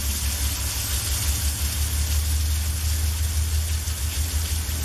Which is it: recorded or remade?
recorded